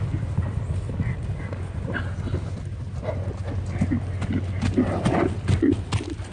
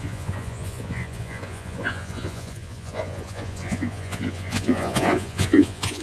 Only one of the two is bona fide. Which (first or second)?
first